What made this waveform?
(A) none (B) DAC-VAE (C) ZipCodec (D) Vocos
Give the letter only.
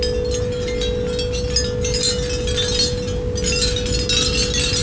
A